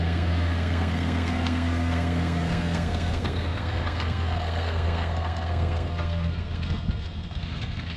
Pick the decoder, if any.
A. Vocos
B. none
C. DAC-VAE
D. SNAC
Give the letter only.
D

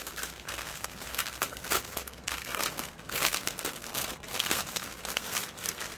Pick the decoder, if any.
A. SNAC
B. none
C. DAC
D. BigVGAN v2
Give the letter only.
A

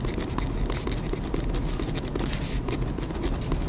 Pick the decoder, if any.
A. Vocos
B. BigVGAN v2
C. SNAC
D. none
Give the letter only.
D